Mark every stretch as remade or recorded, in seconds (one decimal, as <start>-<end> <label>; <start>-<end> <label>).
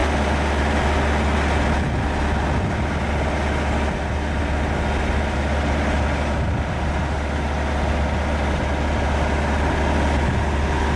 0.0-11.0 recorded